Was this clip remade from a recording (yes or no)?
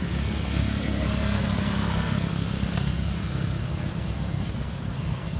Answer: yes